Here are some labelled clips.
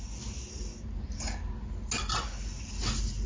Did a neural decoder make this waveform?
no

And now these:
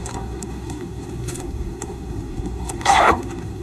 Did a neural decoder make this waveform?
yes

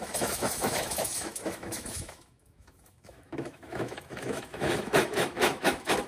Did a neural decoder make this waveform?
yes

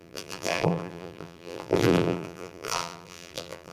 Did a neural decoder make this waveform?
yes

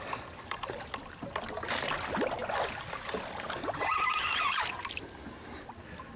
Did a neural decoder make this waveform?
no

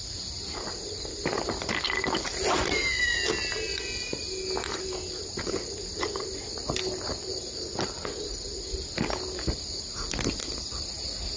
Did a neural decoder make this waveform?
yes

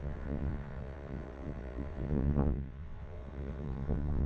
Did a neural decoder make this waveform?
yes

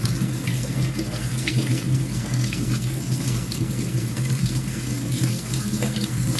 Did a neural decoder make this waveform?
yes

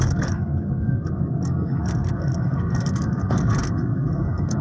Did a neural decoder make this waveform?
yes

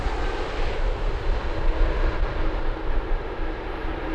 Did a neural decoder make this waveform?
no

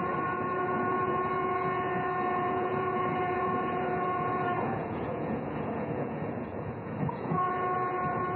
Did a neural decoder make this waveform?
yes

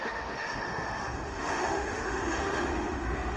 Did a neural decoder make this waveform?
yes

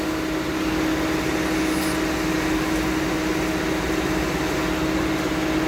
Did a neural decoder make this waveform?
no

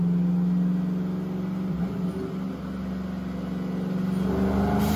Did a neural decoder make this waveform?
no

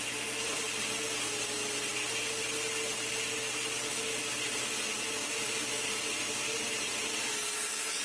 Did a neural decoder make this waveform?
no